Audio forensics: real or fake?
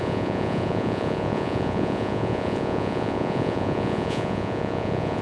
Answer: fake